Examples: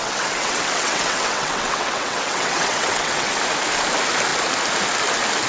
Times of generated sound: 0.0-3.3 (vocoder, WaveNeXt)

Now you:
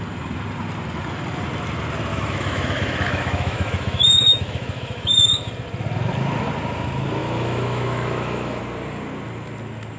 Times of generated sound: 2.1-5.5 (autoencoder, DAC-VAE); 7.2-8.6

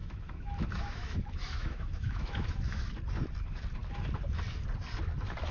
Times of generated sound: 0.0-2.9 (autoencoder, DAC-VAE)